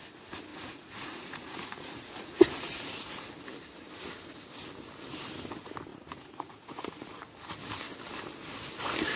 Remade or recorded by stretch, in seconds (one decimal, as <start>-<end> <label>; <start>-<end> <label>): 0.0-0.5 recorded; 0.5-3.2 remade; 3.2-5.9 recorded; 5.9-7.1 remade; 7.1-9.2 recorded